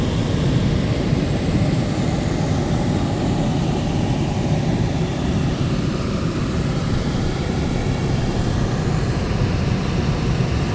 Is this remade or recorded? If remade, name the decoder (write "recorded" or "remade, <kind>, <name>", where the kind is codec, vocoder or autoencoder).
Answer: recorded